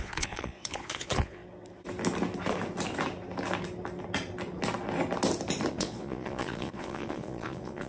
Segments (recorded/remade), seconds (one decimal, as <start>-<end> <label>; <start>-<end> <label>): 0.0-1.4 remade; 1.4-5.7 recorded; 5.7-7.9 remade